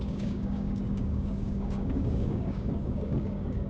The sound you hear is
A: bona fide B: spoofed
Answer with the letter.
B